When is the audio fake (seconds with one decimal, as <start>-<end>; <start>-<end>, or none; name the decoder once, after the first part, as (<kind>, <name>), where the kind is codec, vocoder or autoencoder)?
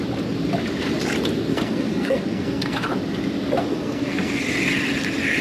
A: 1.5-2.9 (codec, SNAC); 3.6-4.4